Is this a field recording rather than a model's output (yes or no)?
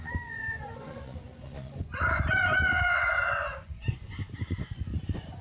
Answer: no